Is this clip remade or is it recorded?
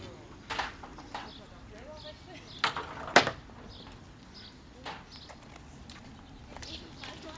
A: recorded